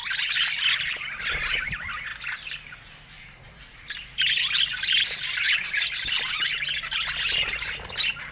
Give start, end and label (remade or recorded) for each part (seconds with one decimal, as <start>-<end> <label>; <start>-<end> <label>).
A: 0.0-8.3 recorded